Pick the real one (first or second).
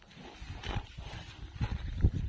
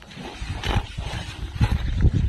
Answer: first